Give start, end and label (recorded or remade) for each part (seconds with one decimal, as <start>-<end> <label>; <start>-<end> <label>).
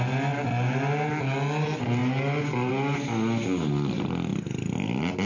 0.0-5.3 recorded